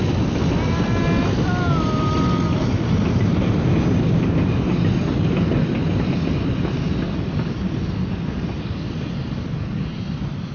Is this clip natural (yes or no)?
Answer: yes